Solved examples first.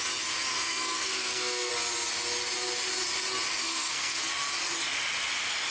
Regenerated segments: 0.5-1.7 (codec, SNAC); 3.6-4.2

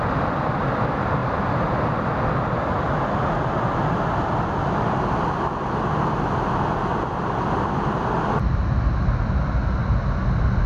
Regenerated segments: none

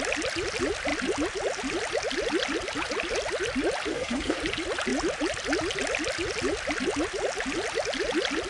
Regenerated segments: 3.9-4.4 (codec, SNAC)

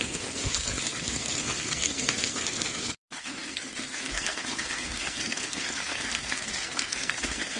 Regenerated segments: 0.0-7.6 (codec, SNAC)

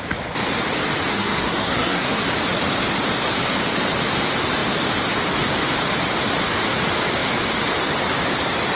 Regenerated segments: 1.1-2.2 (codec, SNAC)

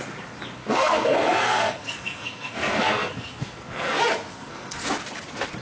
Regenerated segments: 0.6-4.0 (codec, SNAC); 4.4-4.9

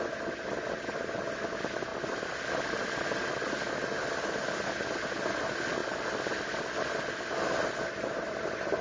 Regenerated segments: none